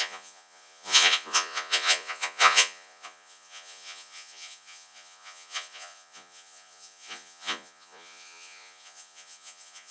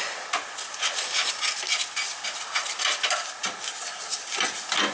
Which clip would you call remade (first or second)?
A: first